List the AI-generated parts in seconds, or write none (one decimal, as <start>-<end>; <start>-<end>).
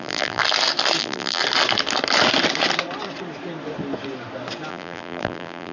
0.0-0.4; 1.0-1.4; 4.7-5.7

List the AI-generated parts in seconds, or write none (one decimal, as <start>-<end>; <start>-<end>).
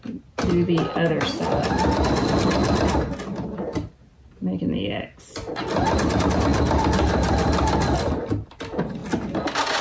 none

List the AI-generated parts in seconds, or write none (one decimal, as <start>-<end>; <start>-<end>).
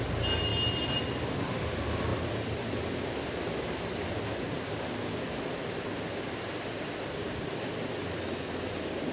none